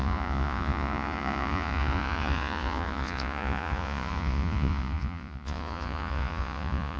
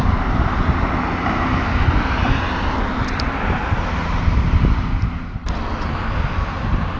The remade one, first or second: first